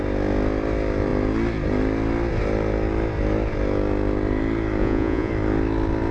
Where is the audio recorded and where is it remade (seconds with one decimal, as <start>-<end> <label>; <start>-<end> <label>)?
0.0-4.8 recorded; 4.8-5.3 remade; 5.3-6.1 recorded